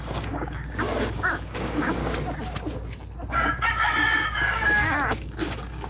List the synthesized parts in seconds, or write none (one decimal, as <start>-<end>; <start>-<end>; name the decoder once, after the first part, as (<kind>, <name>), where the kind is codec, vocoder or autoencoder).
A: 0.0-2.0 (codec, DAC); 3.3-5.9